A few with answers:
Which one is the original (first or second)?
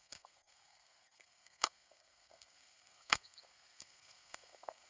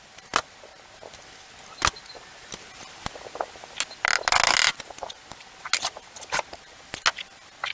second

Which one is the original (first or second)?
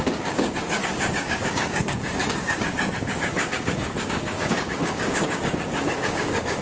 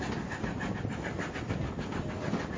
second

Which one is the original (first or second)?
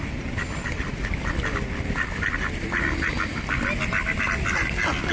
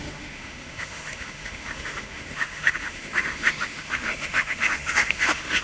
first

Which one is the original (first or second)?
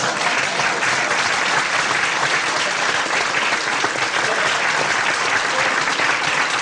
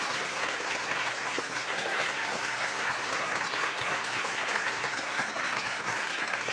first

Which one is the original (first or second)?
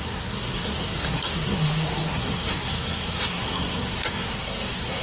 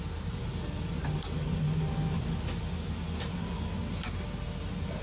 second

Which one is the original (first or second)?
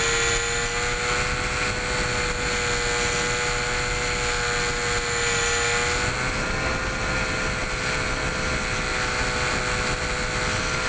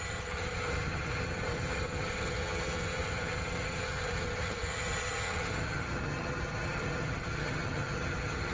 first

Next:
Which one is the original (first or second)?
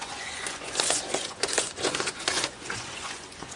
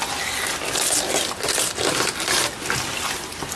second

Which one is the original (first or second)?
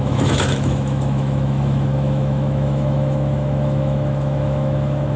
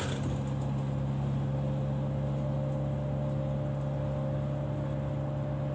second